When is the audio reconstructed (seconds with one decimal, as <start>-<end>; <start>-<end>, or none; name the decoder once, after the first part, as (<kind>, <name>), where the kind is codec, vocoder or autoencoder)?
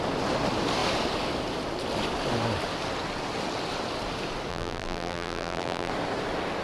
4.5-5.9 (vocoder, BigVGAN v2)